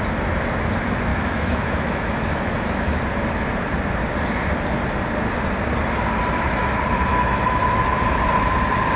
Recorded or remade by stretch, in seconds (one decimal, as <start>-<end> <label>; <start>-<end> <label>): 0.0-1.1 recorded; 1.1-3.0 remade; 3.0-7.1 recorded; 7.1-8.0 remade; 8.0-9.0 recorded